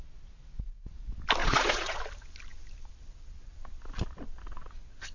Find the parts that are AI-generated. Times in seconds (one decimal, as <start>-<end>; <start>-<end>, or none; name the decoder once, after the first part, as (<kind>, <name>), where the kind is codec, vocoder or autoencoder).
1.4-2.0 (vocoder, Vocos)